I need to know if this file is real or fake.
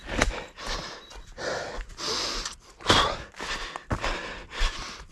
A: real